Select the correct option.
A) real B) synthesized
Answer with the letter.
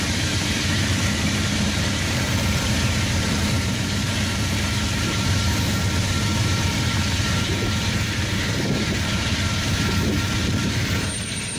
B